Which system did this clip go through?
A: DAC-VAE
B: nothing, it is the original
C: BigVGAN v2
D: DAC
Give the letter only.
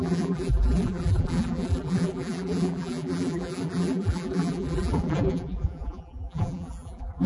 C